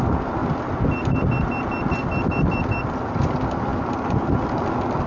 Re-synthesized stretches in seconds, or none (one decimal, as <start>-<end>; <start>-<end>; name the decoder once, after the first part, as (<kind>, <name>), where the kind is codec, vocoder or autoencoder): none

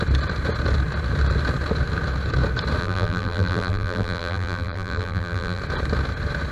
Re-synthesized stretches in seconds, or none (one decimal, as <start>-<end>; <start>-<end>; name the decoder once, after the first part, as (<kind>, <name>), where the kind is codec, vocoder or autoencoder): 2.8-5.6 (vocoder, BigVGAN v2)

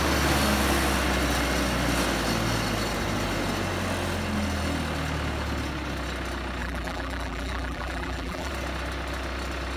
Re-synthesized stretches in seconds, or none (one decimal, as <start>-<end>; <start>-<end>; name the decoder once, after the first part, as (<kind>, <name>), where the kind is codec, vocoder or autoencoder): 6.6-8.5 (vocoder, BigVGAN v2)